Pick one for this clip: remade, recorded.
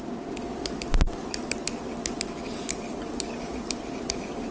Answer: recorded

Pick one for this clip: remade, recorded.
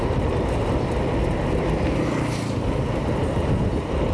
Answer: recorded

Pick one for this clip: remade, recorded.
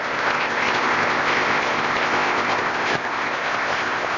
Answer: remade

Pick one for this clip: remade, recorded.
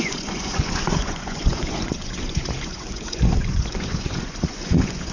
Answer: remade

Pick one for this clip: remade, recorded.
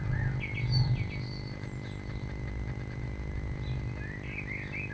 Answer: recorded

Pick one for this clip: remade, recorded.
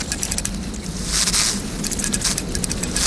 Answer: recorded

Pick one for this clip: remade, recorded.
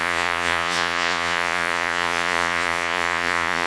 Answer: remade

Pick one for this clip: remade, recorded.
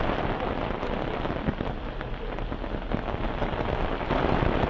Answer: recorded